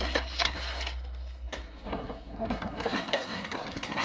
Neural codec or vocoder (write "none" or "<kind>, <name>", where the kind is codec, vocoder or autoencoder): codec, SNAC